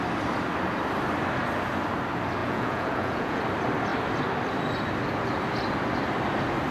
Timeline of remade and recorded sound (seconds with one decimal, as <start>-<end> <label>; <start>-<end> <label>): 0.0-2.4 recorded; 2.4-3.4 remade; 3.4-6.7 recorded